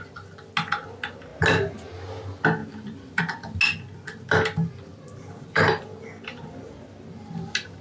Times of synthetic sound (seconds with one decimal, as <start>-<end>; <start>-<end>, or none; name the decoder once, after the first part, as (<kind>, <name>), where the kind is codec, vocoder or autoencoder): 2.6-3.2 (vocoder, BigVGAN v2); 4.9-7.3